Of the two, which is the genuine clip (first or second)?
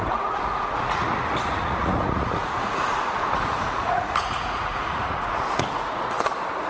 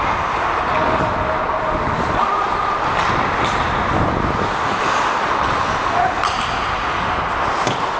second